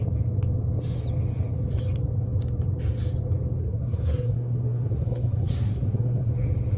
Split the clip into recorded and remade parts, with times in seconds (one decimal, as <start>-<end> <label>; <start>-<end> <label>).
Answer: 0.0-3.6 recorded; 3.6-6.3 remade; 6.3-6.8 recorded